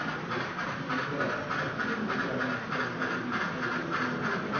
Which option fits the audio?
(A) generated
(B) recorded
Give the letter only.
B